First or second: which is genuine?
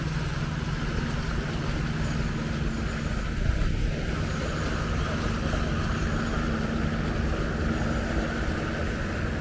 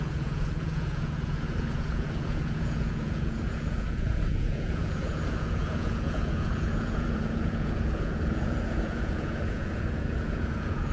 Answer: first